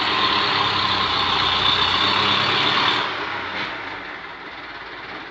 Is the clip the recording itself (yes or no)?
yes